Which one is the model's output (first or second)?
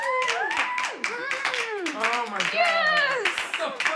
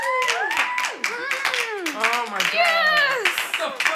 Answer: first